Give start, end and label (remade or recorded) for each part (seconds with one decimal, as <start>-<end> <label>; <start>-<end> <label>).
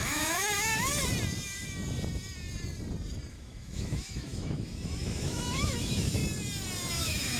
0.0-0.9 remade; 0.9-3.3 recorded; 3.3-6.2 remade; 6.2-7.0 recorded; 7.0-7.4 remade